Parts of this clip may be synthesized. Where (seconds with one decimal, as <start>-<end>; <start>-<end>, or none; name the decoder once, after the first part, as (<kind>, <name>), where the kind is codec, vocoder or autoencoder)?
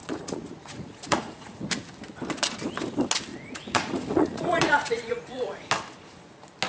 0.0-1.6 (vocoder, Vocos); 3.3-5.7